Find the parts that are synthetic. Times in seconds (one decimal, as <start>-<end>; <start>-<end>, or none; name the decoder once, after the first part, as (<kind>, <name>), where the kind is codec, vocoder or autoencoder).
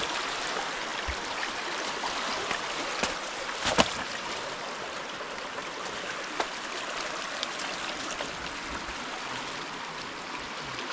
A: none